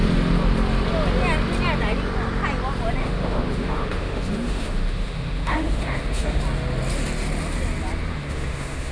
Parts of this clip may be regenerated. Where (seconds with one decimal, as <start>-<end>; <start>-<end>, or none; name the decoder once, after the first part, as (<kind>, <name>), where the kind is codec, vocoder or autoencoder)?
3.0-6.4 (autoencoder, DAC-VAE); 8.1-8.9